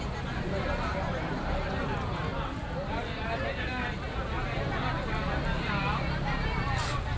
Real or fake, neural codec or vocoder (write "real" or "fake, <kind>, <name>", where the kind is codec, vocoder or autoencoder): real